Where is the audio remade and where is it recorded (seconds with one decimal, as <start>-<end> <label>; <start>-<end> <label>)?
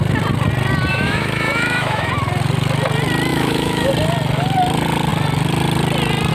0.0-0.9 recorded; 0.9-2.1 remade; 2.1-3.3 recorded; 3.3-3.9 remade; 3.9-6.3 recorded